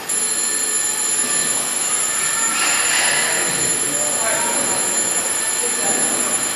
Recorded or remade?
recorded